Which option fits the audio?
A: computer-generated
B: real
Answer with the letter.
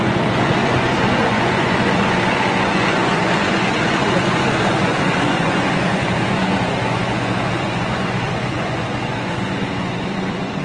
A